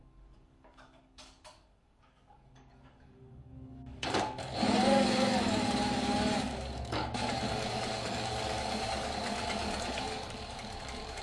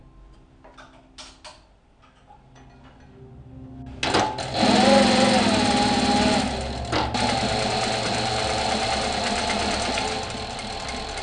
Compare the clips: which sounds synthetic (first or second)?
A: first